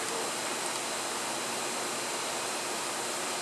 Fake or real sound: real